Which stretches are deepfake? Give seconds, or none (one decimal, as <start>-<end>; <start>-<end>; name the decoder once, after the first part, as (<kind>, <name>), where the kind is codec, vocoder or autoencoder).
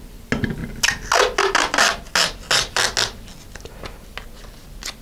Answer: none